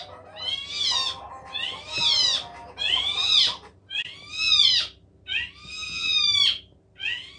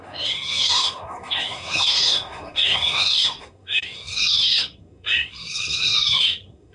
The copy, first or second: second